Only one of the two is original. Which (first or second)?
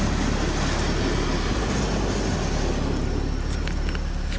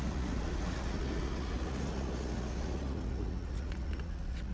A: first